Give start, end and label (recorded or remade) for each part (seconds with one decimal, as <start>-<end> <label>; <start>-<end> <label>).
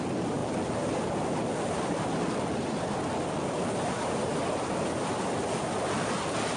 0.0-6.6 recorded